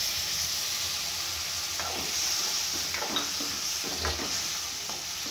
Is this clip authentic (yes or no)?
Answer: yes